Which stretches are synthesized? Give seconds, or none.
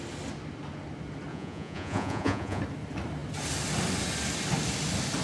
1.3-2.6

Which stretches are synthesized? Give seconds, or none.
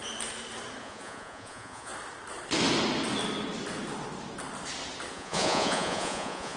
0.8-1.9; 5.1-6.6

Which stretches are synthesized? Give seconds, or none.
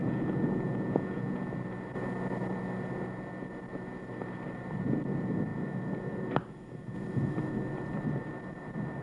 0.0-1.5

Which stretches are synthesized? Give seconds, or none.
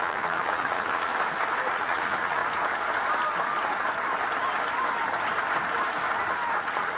0.0-1.1; 1.7-2.4; 6.6-7.0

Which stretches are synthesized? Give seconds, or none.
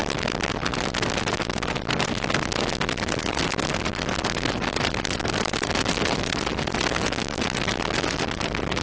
none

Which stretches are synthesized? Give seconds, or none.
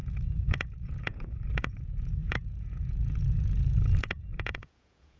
0.0-5.2